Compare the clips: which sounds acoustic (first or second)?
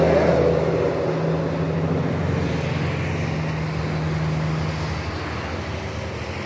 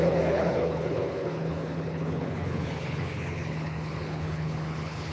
first